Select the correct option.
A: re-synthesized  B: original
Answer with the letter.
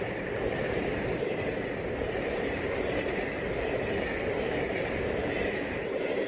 A